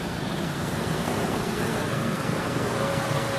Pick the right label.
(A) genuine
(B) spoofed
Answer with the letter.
B